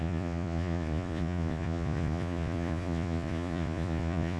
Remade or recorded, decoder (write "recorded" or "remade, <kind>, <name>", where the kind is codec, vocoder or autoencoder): remade, vocoder, Vocos